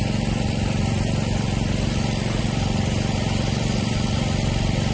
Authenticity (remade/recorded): recorded